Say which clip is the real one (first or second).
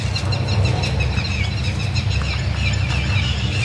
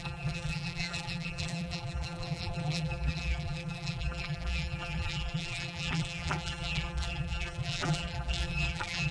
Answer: first